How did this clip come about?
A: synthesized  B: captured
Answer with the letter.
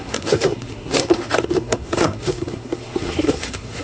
A